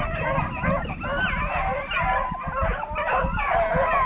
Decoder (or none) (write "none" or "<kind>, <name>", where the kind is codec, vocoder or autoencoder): none